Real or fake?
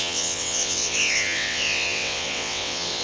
fake